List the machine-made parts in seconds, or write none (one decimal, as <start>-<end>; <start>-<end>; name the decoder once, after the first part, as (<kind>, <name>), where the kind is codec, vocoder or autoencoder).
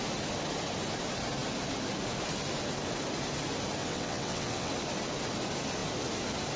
3.8-4.7 (vocoder, WaveNeXt)